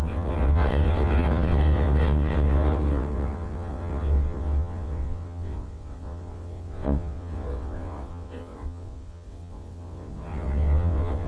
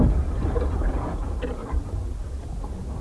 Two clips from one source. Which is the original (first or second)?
second